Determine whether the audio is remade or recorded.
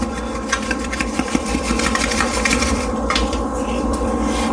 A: remade